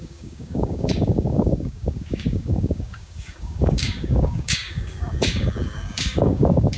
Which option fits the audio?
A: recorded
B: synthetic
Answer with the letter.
B